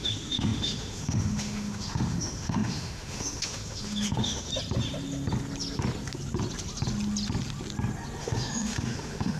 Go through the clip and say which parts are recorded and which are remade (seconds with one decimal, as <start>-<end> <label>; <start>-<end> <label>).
0.0-4.5 remade; 4.5-8.2 recorded; 8.2-9.4 remade